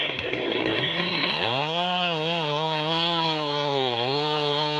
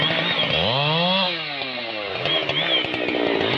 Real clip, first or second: second